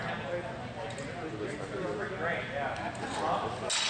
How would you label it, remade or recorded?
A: recorded